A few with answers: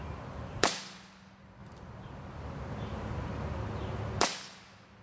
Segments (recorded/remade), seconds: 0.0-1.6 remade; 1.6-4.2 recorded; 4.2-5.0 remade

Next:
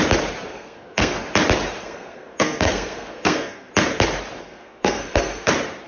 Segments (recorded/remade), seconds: 0.0-0.5 recorded; 0.5-1.3 remade; 1.3-1.8 recorded; 1.8-3.7 remade; 3.7-4.4 recorded; 4.4-5.5 remade; 5.5-5.9 recorded

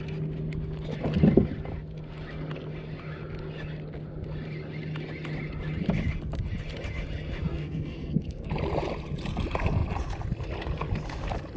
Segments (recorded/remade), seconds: 0.0-7.5 recorded; 7.5-8.5 remade; 8.5-11.6 recorded

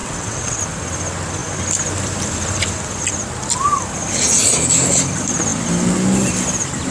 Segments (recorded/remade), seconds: 0.0-0.6 remade; 0.6-6.9 recorded

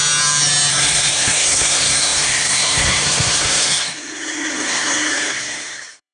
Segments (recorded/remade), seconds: 0.0-0.7 recorded; 0.7-6.1 remade

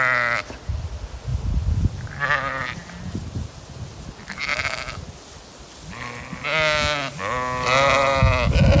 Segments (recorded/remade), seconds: 0.0-8.8 recorded